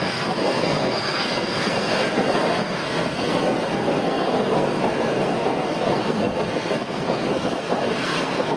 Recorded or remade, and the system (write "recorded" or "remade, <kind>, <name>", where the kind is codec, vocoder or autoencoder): remade, codec, SNAC